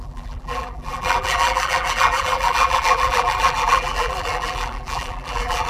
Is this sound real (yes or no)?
no